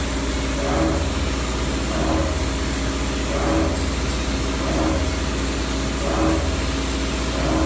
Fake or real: real